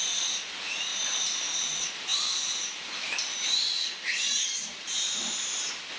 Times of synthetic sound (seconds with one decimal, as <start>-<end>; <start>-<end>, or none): 0.9-1.4; 2.1-5.5